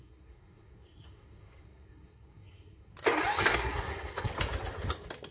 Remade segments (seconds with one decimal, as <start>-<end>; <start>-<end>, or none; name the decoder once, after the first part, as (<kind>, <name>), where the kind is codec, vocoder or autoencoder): 0.0-2.9 (codec, SNAC); 3.4-4.3